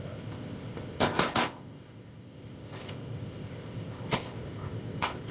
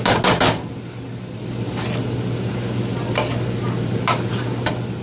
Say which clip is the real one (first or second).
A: second